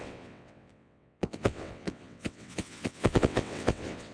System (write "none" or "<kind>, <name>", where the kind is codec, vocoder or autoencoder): vocoder, WaveNeXt